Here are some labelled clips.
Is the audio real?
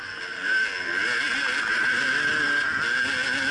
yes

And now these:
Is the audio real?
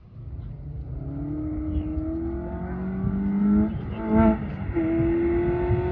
yes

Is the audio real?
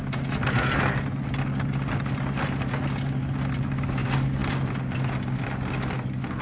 yes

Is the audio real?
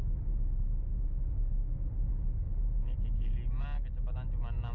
yes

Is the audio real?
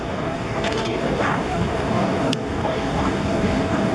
no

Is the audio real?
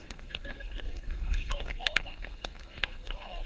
no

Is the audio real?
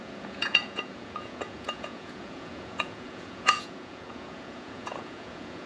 no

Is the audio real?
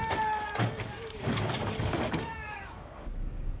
no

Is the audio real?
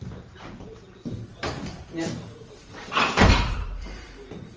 no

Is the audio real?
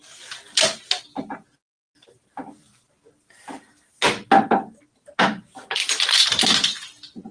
yes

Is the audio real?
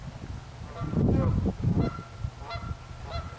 yes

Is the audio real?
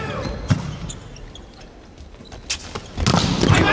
yes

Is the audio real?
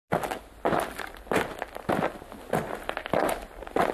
yes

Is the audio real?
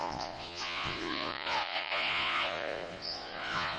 no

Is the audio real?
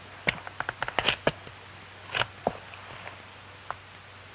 yes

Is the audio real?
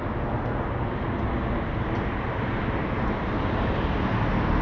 yes